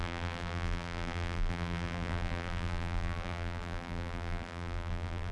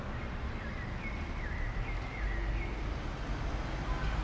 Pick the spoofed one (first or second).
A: first